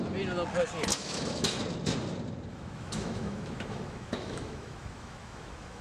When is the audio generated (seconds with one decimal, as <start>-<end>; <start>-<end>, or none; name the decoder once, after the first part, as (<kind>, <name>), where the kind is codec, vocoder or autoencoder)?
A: 0.9-1.6 (autoencoder, DAC-VAE); 2.5-5.8